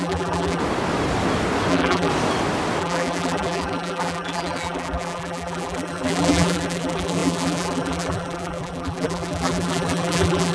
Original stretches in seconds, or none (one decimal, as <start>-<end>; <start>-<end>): 0.6-1.7; 2.1-2.8